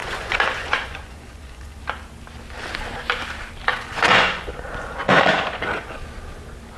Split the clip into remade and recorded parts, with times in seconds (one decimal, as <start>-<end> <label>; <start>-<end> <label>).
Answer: 0.0-1.8 remade; 1.8-3.7 recorded; 3.7-6.0 remade; 6.0-6.8 recorded